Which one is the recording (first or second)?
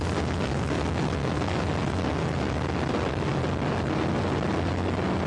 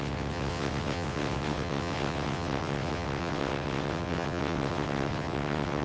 first